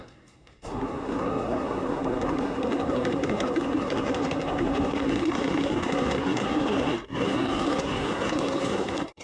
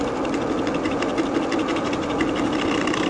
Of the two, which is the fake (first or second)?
first